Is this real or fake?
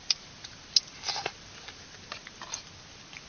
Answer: real